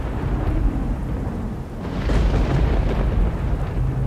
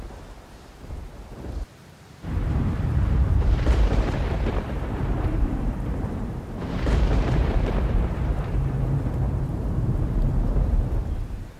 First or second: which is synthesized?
second